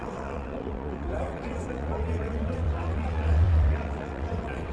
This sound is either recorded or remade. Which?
remade